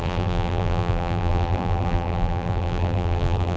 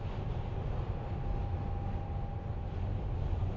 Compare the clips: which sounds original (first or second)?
second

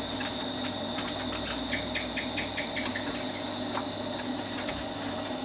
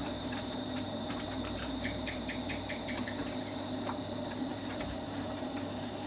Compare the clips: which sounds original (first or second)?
first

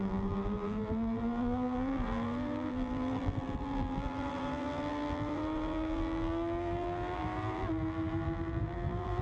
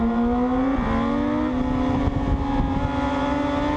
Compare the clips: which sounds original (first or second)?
second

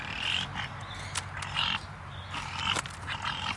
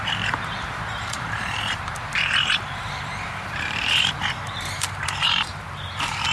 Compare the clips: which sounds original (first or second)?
first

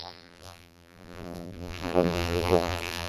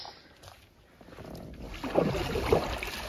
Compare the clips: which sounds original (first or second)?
second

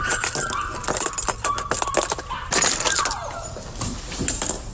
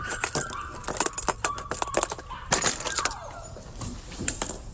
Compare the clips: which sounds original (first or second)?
first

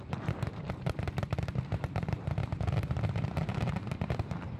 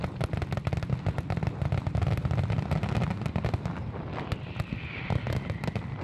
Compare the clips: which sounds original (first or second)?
second